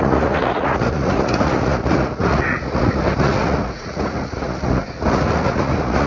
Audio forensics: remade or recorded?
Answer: remade